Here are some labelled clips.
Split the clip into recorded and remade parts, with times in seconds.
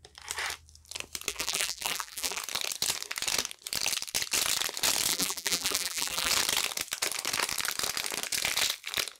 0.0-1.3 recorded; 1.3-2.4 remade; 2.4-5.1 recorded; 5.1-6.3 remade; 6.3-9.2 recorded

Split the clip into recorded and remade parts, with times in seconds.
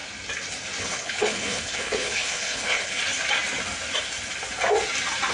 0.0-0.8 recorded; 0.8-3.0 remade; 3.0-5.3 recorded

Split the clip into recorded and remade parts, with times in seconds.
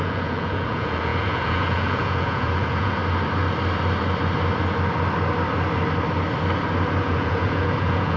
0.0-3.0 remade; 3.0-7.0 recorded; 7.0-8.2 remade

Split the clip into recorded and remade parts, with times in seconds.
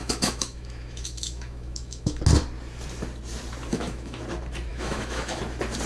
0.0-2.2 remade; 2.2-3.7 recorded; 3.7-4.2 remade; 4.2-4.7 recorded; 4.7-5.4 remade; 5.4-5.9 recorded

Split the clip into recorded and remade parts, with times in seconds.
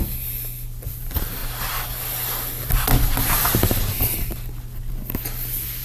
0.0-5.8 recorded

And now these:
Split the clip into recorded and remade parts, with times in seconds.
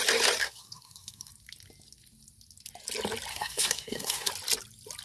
0.0-0.4 recorded; 0.4-1.3 remade; 1.3-3.3 recorded; 3.3-4.3 remade; 4.3-5.0 recorded